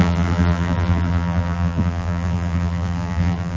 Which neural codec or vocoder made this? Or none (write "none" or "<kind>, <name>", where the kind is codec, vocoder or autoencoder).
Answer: vocoder, BigVGAN v2